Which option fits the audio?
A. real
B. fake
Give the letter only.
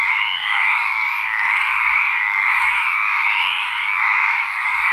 B